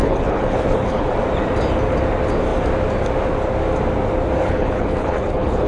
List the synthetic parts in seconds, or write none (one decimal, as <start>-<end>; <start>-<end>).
0.0-1.1; 4.4-5.7